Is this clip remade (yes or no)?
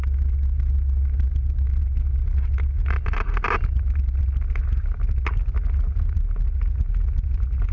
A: no